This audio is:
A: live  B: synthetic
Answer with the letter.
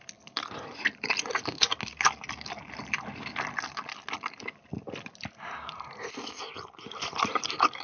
A